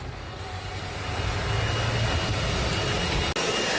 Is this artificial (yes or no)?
no